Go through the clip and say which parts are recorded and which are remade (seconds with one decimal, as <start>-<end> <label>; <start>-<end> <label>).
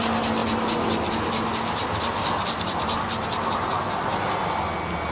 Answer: 0.0-5.1 recorded